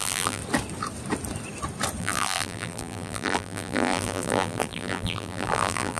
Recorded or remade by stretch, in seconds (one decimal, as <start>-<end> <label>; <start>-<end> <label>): 0.0-0.4 remade; 0.4-2.0 recorded; 2.0-6.0 remade